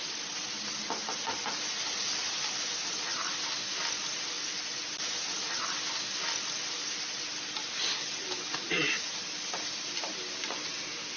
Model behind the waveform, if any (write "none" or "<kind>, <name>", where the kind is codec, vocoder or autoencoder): none